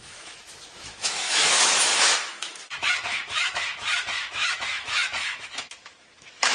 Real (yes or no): no